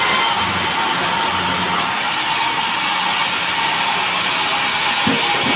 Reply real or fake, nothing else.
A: real